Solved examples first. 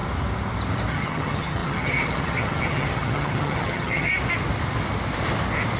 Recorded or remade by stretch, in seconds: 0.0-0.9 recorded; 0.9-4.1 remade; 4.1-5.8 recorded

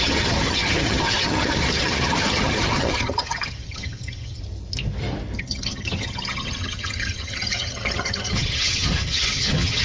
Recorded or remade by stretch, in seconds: 0.0-4.4 remade; 4.4-5.4 recorded; 5.4-9.8 remade

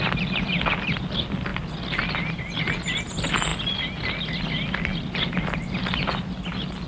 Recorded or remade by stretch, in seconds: 0.0-6.9 recorded

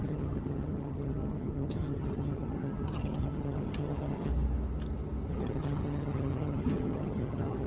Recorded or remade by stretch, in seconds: 0.0-4.3 remade; 4.3-5.3 recorded; 5.3-7.7 remade

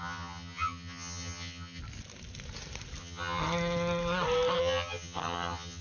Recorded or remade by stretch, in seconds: 0.0-1.8 remade; 1.8-3.0 recorded; 3.0-3.4 remade; 3.4-4.6 recorded; 4.6-5.8 remade

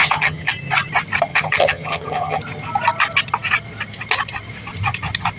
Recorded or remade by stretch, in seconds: 0.0-0.5 remade; 0.5-1.3 recorded; 1.3-2.4 remade; 2.4-5.4 recorded